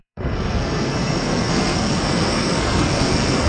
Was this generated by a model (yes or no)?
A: yes